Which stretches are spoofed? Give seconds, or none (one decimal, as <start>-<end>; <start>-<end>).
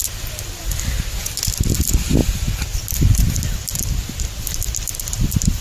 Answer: 2.2-5.6